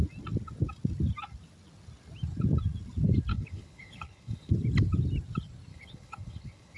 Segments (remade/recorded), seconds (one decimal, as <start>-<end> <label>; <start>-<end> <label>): 0.0-3.3 recorded; 3.3-4.5 remade; 4.5-5.7 recorded; 5.7-6.8 remade